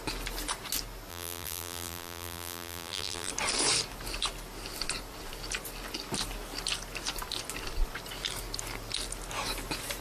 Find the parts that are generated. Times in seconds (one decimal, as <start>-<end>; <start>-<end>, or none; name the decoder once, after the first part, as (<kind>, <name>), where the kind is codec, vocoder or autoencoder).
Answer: 1.1-3.3 (vocoder, BigVGAN v2)